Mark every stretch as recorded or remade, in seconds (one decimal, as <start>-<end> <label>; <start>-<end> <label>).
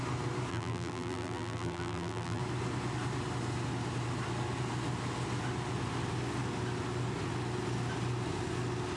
0.0-0.5 recorded; 0.5-2.4 remade; 2.4-9.0 recorded